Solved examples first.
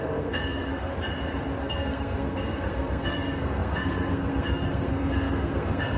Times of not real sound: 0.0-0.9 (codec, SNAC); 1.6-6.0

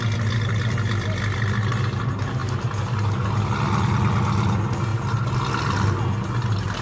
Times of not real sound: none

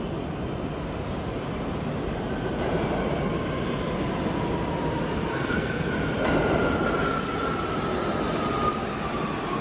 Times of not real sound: 5.3-5.9 (codec, SNAC)